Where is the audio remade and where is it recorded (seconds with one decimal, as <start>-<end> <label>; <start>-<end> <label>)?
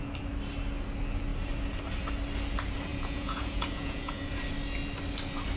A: 0.0-2.9 recorded; 2.9-4.3 remade; 4.3-5.6 recorded